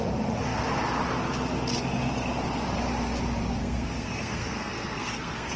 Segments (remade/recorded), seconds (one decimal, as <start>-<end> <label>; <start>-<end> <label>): 0.0-3.6 recorded; 3.6-5.6 remade

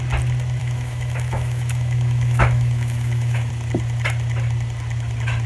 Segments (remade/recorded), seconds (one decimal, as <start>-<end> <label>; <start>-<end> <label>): 0.0-0.6 recorded; 0.6-3.5 remade; 3.5-5.5 recorded

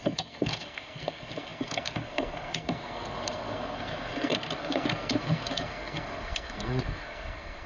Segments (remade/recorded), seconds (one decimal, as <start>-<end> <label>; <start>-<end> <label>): 0.0-7.7 remade

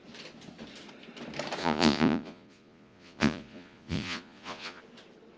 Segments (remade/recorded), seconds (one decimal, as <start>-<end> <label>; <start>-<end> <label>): 0.0-1.6 recorded; 1.6-4.8 remade; 4.8-5.4 recorded

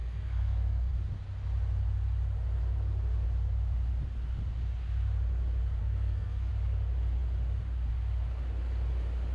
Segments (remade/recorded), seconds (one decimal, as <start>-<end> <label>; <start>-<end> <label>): 0.0-0.9 remade; 0.9-5.8 recorded; 5.8-6.5 remade; 6.5-9.3 recorded

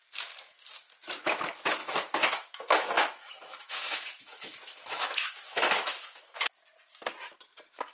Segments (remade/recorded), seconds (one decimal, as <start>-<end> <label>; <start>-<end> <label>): 0.0-1.8 recorded; 1.8-6.5 remade; 6.5-7.9 recorded

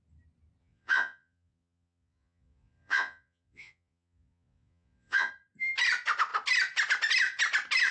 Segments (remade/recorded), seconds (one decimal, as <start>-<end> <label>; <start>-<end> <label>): 0.0-0.6 recorded; 0.6-5.3 remade; 5.3-7.9 recorded

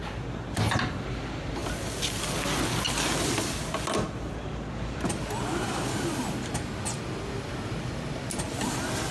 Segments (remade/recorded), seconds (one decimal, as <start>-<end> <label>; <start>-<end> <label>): 0.0-9.1 recorded